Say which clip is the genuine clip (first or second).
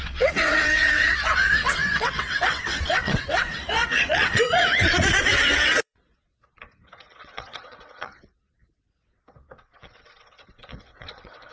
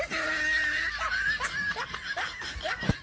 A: second